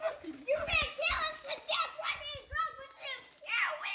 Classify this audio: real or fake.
real